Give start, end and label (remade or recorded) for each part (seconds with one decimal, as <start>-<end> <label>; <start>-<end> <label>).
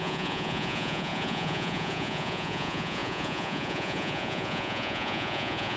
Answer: 0.0-5.8 remade